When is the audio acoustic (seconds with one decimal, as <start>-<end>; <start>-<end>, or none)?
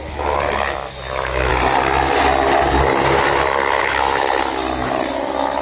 1.5-3.8